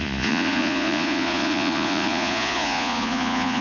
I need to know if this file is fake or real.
fake